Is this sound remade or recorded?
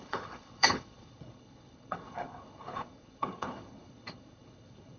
remade